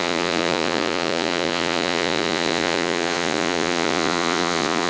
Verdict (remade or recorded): remade